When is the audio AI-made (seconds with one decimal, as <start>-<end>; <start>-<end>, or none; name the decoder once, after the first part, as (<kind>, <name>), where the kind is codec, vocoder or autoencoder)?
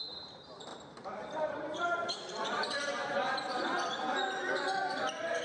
0.7-3.9 (vocoder, BigVGAN v2)